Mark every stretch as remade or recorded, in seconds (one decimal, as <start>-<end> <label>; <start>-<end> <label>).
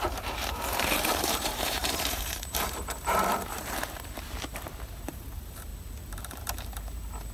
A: 0.0-5.7 remade; 5.7-6.2 recorded; 6.2-7.3 remade